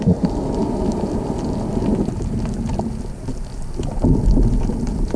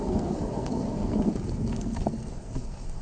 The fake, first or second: second